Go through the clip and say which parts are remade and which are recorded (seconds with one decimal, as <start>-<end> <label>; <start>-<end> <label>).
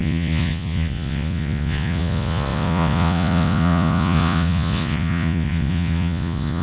0.0-6.6 remade